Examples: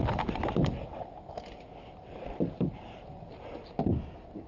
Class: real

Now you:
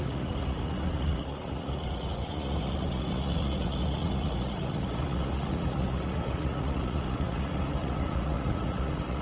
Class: fake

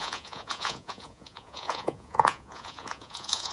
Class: fake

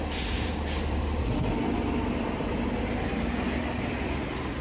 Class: real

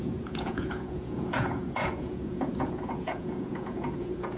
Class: fake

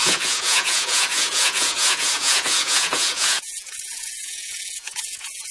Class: fake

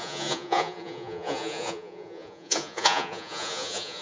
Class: fake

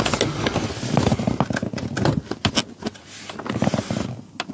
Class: real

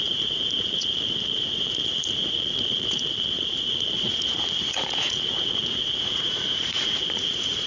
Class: fake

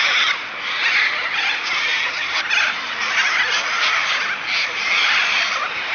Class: real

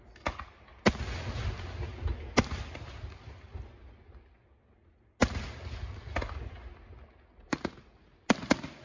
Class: real